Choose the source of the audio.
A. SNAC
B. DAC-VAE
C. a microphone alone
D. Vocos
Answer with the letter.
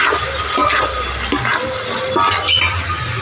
C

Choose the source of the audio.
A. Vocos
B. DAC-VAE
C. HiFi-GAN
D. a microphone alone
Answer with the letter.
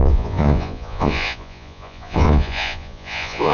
A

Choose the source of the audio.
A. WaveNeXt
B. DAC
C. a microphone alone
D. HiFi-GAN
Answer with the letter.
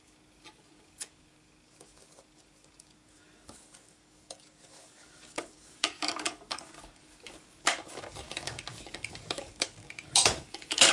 B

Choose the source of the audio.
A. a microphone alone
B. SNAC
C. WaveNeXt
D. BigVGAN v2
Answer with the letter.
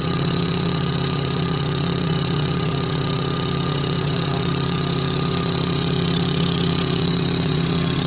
C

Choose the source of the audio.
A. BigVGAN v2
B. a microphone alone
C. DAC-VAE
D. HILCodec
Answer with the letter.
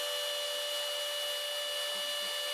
B